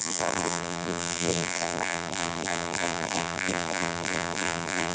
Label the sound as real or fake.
fake